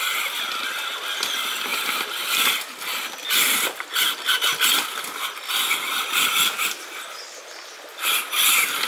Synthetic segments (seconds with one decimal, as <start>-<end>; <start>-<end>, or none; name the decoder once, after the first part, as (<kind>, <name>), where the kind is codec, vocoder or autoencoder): none